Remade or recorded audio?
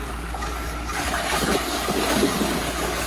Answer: remade